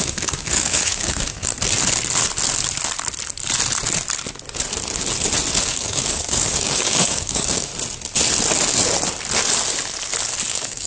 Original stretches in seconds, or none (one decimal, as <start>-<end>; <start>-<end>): 1.5-5.6; 7.7-10.5